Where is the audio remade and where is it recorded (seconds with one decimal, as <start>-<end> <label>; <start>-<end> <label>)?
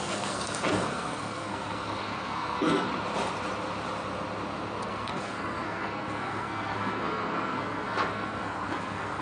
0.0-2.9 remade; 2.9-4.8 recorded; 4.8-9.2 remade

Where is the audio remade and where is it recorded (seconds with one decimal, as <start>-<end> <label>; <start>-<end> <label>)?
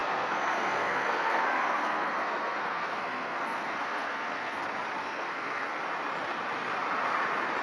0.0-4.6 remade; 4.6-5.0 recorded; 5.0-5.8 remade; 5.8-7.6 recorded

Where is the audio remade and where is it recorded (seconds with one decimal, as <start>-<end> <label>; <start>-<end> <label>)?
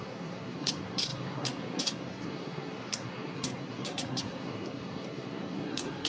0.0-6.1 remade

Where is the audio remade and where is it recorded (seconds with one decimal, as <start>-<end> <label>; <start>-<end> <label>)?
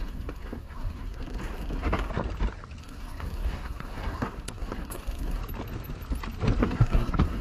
0.0-2.1 remade; 2.1-2.8 recorded; 2.8-5.4 remade; 5.4-6.6 recorded; 6.6-7.4 remade